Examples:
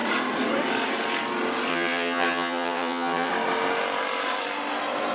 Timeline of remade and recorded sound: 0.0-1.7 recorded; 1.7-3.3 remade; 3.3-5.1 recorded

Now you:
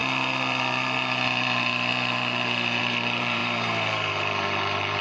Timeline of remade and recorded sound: 0.0-2.8 recorded; 2.8-5.0 remade

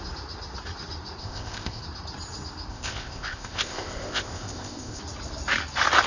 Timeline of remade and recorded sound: 0.0-1.2 recorded; 1.2-1.8 remade; 1.8-2.7 recorded; 2.7-5.0 remade; 5.0-6.1 recorded

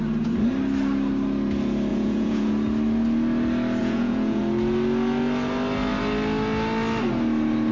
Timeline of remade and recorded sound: 0.0-1.9 recorded; 1.9-2.5 remade; 2.5-3.8 recorded; 3.8-4.4 remade; 4.4-7.7 recorded

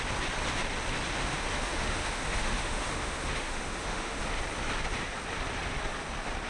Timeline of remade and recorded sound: 0.0-1.2 recorded; 1.2-4.2 remade; 4.2-6.5 recorded

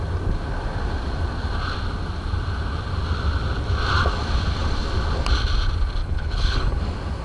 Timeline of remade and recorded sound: 0.0-6.0 recorded; 6.0-6.8 remade; 6.8-7.2 recorded